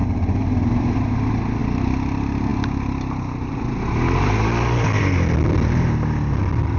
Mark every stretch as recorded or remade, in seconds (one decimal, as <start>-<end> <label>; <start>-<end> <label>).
0.0-6.8 recorded